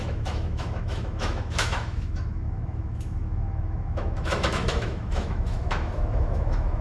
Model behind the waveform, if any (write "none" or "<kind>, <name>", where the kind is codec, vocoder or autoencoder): autoencoder, DAC-VAE